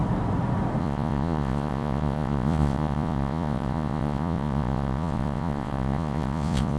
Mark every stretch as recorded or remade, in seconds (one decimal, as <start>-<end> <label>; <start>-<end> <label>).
0.0-0.8 recorded; 0.8-6.8 remade